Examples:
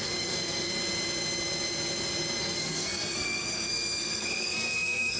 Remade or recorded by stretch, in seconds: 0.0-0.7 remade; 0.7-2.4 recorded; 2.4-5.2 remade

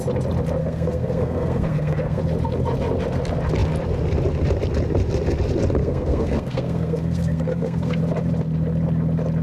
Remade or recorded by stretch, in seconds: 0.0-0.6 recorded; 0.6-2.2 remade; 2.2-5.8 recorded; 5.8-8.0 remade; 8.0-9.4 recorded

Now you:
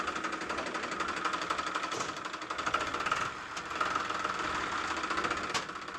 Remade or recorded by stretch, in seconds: 0.0-6.0 recorded

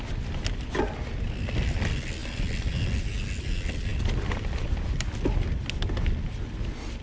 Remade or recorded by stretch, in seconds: 0.0-7.0 recorded

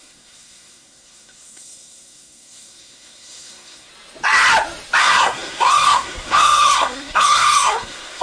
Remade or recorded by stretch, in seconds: 0.0-3.9 remade; 3.9-5.0 recorded; 5.0-8.2 remade